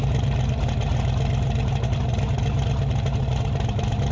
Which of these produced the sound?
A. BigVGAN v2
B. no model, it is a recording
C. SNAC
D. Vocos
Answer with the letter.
B